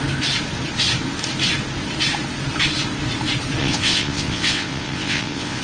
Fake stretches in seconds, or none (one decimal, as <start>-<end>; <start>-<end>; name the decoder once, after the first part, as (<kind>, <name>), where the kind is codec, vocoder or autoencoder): 3.6-5.6 (vocoder, WaveNeXt)

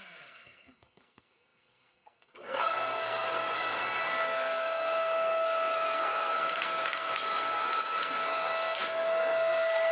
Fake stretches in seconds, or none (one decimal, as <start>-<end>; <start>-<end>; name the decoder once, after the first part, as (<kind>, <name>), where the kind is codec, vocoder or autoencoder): 0.0-9.9 (codec, SNAC)

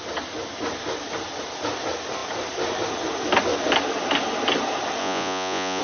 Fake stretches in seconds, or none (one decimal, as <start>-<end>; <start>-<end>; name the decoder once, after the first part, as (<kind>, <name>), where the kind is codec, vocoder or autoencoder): 5.0-5.8 (vocoder, Vocos)

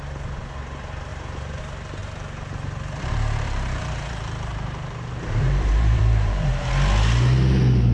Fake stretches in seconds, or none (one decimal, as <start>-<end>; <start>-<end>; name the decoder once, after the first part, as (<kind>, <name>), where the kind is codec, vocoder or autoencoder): 2.0-6.7 (vocoder, BigVGAN v2)

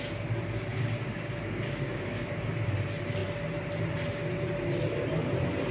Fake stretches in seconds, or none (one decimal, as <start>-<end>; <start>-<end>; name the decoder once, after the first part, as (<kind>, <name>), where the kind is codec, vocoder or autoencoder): 0.7-2.5 (codec, DAC)

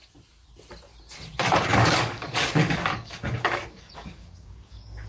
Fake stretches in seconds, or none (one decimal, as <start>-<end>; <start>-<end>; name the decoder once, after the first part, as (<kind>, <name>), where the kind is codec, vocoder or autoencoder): 1.7-5.1 (codec, DAC)

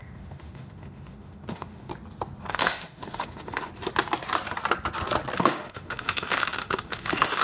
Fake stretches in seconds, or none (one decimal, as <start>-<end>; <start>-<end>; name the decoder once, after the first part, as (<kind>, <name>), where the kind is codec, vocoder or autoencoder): 0.0-1.9 (autoencoder, DAC-VAE); 2.5-3.7; 5.4-7.4